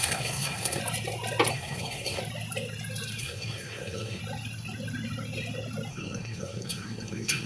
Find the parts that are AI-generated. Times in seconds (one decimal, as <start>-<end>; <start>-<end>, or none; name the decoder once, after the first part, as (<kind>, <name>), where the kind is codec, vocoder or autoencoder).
0.0-0.8 (codec, SNAC); 1.5-2.2; 3.2-4.2; 5.9-7.5